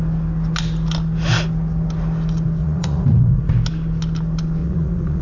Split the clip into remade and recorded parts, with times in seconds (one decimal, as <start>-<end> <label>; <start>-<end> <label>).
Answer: 0.0-2.6 recorded; 2.6-3.5 remade; 3.5-4.6 recorded; 4.6-5.2 remade

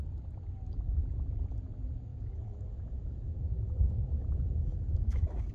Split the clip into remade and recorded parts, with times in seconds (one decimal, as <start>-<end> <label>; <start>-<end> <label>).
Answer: 0.0-2.1 recorded; 2.1-5.5 remade

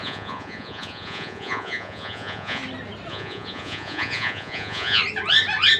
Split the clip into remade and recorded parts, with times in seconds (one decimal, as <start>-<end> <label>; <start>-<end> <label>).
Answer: 0.0-2.6 remade; 2.6-3.1 recorded; 3.1-5.0 remade; 5.0-5.8 recorded

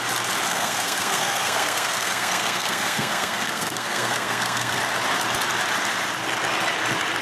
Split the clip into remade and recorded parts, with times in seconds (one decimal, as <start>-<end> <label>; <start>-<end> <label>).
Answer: 0.0-0.5 recorded; 0.5-4.8 remade; 4.8-7.2 recorded

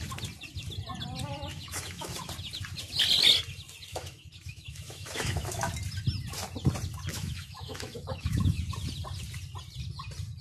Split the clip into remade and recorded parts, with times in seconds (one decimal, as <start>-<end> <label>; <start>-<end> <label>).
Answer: 0.0-1.5 recorded; 1.5-2.3 remade; 2.3-3.9 recorded; 3.9-5.7 remade; 5.7-7.1 recorded; 7.1-8.6 remade; 8.6-10.4 recorded

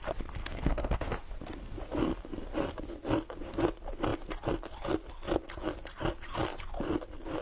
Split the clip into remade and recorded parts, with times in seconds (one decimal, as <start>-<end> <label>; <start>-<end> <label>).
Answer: 0.0-0.4 recorded; 0.4-1.1 remade; 1.1-7.4 recorded

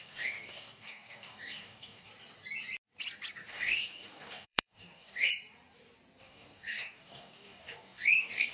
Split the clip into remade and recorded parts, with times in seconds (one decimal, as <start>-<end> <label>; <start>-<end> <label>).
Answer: 0.0-2.1 remade; 2.1-3.5 recorded; 3.5-5.3 remade; 5.3-6.2 recorded; 6.2-8.5 remade